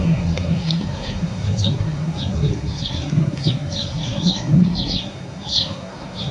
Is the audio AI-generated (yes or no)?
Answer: yes